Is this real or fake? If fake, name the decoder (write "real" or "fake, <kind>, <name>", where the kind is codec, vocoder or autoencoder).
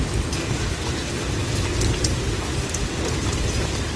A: real